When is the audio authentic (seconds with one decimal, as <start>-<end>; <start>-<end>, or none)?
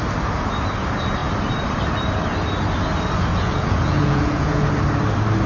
0.0-3.3; 4.7-5.5